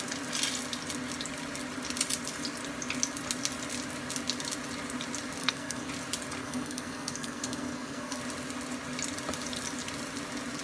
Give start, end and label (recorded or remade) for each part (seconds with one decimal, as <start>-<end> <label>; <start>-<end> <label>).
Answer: 0.0-5.4 recorded; 5.4-5.9 remade; 5.9-6.4 recorded; 6.4-8.2 remade; 8.2-10.6 recorded